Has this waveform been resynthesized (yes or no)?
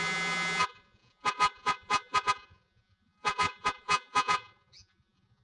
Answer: yes